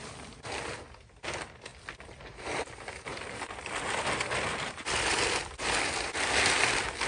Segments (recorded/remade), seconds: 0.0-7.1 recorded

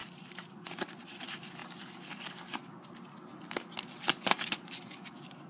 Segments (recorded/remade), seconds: 0.0-5.5 recorded